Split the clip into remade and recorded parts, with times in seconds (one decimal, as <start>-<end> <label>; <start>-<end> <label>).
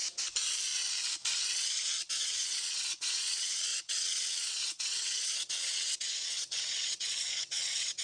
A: 0.0-2.1 recorded; 2.1-8.0 remade